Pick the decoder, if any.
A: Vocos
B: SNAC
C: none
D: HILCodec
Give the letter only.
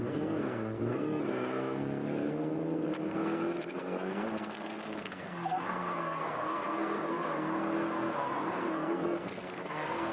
B